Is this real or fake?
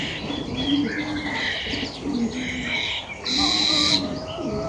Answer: real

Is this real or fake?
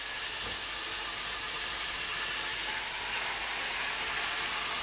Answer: real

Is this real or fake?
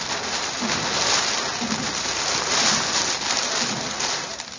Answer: real